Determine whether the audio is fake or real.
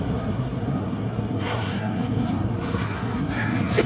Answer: fake